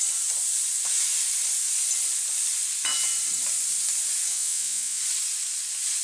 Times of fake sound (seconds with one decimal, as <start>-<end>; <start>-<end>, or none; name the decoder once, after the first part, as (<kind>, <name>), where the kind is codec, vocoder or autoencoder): 4.3-5.0 (vocoder, Vocos)